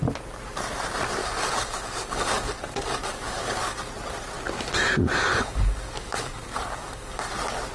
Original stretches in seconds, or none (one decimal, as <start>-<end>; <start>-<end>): 0.0-1.2; 3.8-5.3; 7.3-7.7